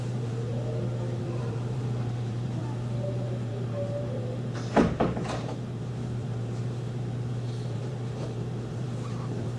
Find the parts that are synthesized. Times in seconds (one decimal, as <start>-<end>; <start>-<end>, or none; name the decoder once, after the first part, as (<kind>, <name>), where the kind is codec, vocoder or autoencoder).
0.0-0.5 (vocoder, BigVGAN v2); 1.2-2.6; 3.2-9.6